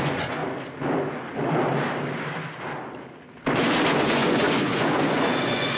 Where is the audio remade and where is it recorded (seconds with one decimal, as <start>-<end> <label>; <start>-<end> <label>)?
0.0-0.4 remade; 0.4-3.9 recorded; 3.9-5.8 remade